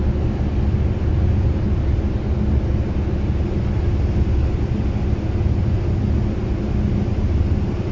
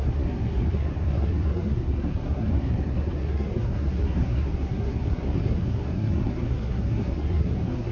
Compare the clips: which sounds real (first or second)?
first